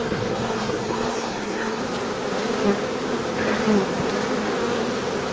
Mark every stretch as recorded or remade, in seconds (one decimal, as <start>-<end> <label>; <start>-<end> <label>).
0.0-1.8 remade; 1.8-5.3 recorded